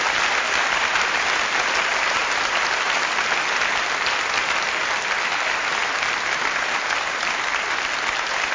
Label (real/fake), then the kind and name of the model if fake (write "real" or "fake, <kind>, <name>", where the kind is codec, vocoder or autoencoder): real